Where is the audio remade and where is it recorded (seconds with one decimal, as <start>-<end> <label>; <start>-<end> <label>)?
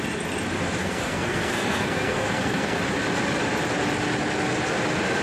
0.0-0.8 recorded; 0.8-2.8 remade; 2.8-5.2 recorded